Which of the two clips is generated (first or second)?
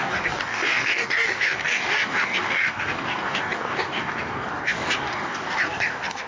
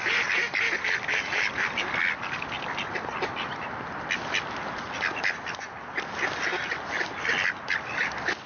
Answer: first